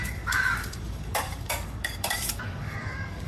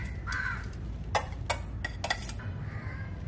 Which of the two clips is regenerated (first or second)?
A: first